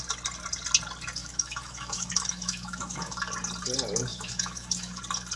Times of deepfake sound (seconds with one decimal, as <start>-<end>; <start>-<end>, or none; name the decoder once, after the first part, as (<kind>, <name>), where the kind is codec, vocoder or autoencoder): 1.2-3.2 (autoencoder, DAC-VAE); 4.1-5.0